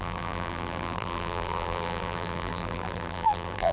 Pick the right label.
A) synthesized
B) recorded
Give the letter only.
A